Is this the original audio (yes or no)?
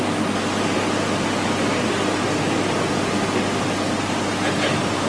yes